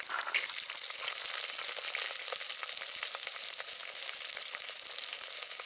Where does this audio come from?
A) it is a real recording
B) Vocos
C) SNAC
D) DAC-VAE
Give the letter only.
A